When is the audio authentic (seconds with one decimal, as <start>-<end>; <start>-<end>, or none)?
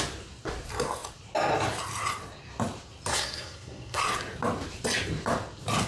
0.0-3.1; 4.0-5.9